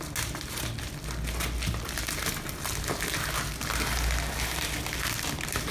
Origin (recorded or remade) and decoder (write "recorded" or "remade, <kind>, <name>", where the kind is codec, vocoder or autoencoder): recorded